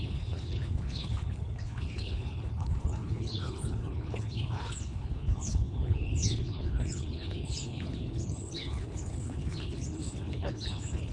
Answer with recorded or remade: remade